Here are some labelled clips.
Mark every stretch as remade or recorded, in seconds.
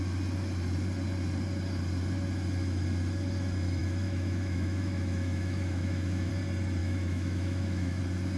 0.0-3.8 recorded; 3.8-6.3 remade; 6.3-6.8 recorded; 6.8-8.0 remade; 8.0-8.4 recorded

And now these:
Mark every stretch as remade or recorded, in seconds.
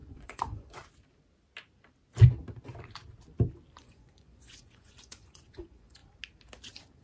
0.0-0.8 remade; 0.8-3.8 recorded; 3.8-6.0 remade; 6.0-7.0 recorded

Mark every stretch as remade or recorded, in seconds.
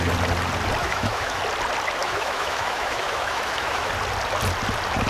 0.0-0.8 recorded; 0.8-1.4 remade; 1.4-2.0 recorded; 2.0-3.9 remade; 3.9-5.1 recorded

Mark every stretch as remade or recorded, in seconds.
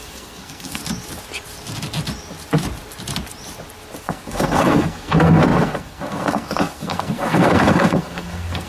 0.0-0.8 remade; 0.8-4.0 recorded; 4.0-8.7 remade